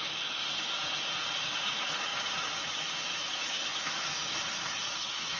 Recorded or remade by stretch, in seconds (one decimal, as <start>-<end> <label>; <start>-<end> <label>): 0.0-0.4 remade; 0.4-1.4 recorded; 1.4-5.4 remade